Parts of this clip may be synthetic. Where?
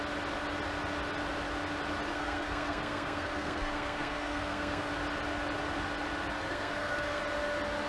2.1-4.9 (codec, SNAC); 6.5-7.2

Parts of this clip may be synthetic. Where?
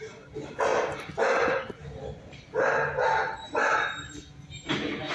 0.7-1.2 (vocoder, BigVGAN v2)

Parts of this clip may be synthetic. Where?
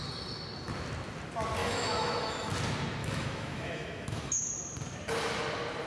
1.6-2.5 (autoencoder, DAC-VAE); 3.0-4.4